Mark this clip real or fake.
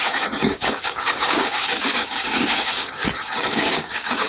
fake